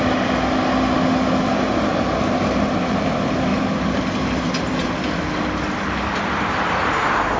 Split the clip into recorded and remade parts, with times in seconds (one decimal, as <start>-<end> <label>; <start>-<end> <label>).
0.0-7.4 recorded